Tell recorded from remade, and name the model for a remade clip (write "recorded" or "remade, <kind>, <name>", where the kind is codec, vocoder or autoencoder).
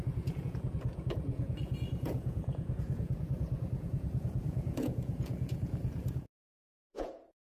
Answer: remade, vocoder, Vocos